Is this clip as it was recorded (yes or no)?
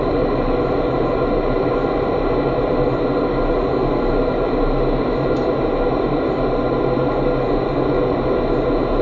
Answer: yes